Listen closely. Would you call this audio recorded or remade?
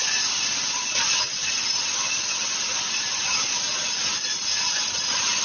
recorded